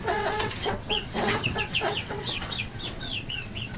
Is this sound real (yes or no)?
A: no